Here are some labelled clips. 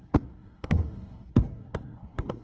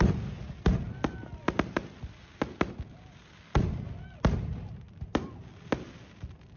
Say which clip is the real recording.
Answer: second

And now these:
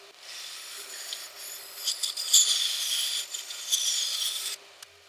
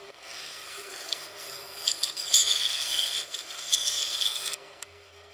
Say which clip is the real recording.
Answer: first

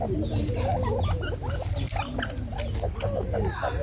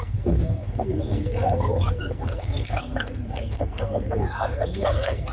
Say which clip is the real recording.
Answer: first